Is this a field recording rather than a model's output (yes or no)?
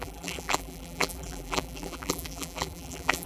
no